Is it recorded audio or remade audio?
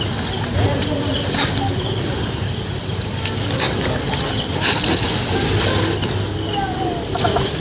recorded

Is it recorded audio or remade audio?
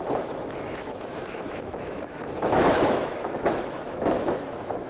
remade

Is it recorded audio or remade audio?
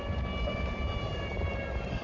recorded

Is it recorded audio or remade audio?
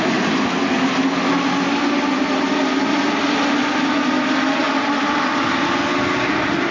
recorded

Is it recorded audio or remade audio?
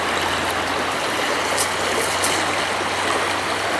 recorded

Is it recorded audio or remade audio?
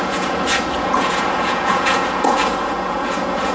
remade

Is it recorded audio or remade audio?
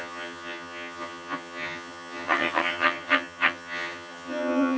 remade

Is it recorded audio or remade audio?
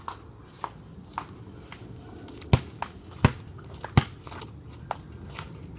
recorded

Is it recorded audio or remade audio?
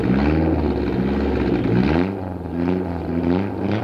recorded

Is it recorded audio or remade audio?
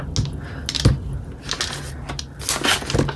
recorded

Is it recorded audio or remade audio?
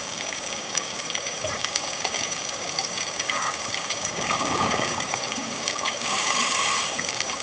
remade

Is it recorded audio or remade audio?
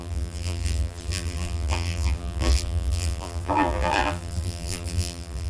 remade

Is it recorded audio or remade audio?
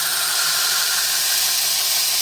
remade